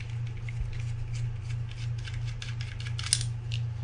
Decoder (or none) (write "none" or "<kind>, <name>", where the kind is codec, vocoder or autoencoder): none